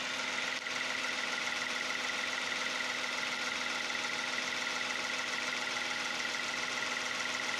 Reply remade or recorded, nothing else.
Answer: recorded